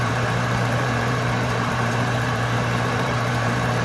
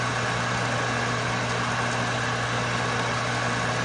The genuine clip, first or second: second